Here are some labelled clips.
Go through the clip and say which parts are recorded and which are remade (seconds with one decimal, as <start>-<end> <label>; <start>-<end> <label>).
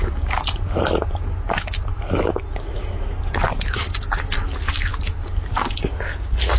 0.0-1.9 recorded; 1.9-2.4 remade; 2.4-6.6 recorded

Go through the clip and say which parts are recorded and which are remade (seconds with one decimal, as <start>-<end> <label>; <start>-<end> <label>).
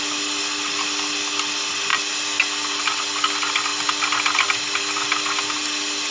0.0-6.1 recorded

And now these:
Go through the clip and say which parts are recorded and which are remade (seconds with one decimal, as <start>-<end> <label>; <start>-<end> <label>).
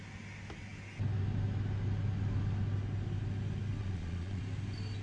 0.0-3.8 recorded; 3.8-4.4 remade; 4.4-5.0 recorded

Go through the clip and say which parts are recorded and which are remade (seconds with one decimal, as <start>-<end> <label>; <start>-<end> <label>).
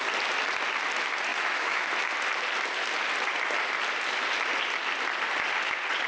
0.0-1.3 recorded; 1.3-1.9 remade; 1.9-6.1 recorded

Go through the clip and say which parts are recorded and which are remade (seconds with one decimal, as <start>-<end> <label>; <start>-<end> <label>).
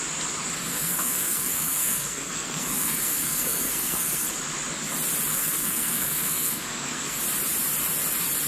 0.0-0.7 recorded; 0.7-4.3 remade; 4.3-5.3 recorded; 5.3-7.2 remade; 7.2-8.5 recorded